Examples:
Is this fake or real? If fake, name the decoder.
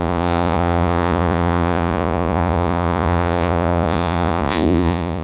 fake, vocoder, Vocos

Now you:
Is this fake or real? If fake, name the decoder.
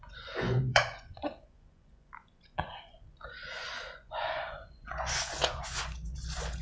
fake, vocoder, Vocos